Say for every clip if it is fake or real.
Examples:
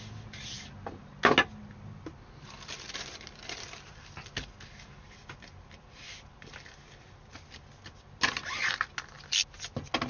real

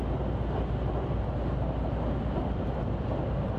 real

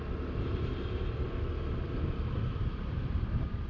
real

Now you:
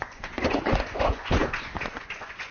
fake